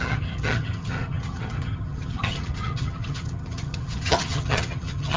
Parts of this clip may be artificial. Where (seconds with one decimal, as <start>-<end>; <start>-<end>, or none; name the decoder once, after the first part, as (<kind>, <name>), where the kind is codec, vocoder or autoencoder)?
0.0-5.2 (vocoder, HiFi-GAN)